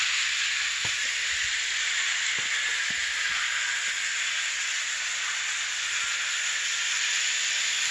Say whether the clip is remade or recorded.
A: recorded